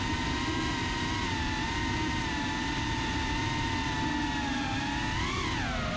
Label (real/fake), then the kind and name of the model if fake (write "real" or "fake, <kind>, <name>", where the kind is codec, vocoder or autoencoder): real